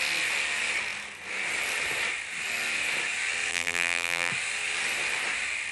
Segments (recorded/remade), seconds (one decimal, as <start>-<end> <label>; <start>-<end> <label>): 0.0-3.5 recorded; 3.5-4.3 remade; 4.3-5.7 recorded

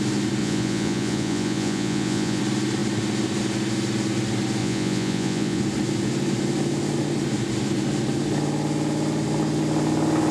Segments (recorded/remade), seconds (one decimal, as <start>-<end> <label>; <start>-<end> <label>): 0.0-0.4 recorded; 0.4-2.4 remade; 2.4-4.6 recorded; 4.6-5.6 remade; 5.6-10.3 recorded

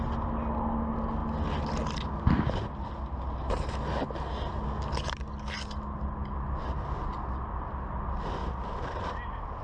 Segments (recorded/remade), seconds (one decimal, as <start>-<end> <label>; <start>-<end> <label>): 0.0-8.4 recorded; 8.4-9.1 remade; 9.1-9.6 recorded

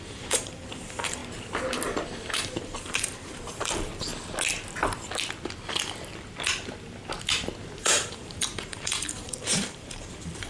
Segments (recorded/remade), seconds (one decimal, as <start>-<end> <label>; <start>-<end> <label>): 0.0-1.2 remade; 1.2-2.6 recorded; 2.6-4.1 remade; 4.1-7.8 recorded; 7.8-10.5 remade